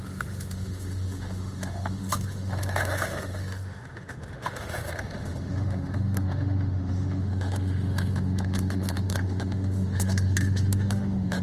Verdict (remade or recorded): remade